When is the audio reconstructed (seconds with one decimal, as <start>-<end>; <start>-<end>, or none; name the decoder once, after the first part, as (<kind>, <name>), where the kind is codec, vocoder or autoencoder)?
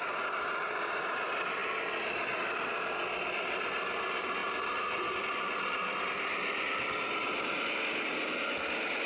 none